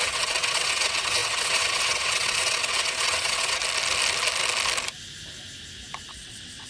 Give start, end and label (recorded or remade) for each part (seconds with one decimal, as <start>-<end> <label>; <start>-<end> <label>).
0.0-3.6 remade; 3.6-6.1 recorded; 6.1-6.7 remade